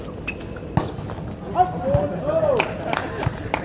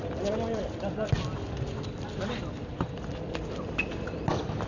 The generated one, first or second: second